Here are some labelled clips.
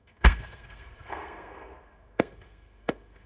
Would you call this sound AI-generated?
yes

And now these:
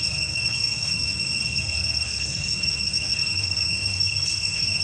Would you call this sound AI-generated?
yes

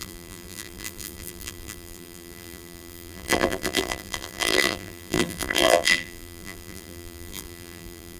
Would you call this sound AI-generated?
yes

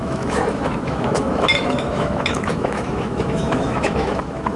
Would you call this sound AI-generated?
yes